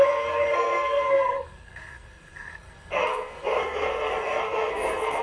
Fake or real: fake